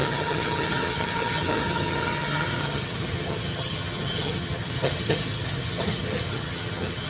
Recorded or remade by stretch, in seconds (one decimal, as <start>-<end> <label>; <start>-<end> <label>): 0.0-7.1 remade